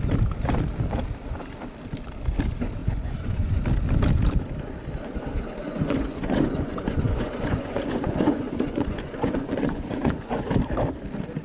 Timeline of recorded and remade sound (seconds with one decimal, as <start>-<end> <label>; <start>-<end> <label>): 0.0-2.8 recorded; 2.8-3.6 remade; 3.6-5.3 recorded; 5.3-10.5 remade; 10.5-11.4 recorded